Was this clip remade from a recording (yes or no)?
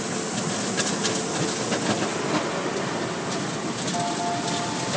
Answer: no